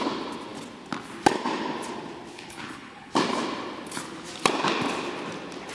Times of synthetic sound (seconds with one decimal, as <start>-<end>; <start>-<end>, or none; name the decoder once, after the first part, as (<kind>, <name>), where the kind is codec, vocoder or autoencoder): 2.3-3.1 (codec, HILCodec)

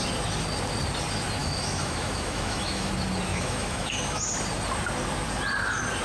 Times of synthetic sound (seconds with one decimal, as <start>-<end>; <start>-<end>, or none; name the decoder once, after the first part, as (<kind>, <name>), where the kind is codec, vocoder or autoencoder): 1.4-2.9 (autoencoder, DAC-VAE); 3.3-4.2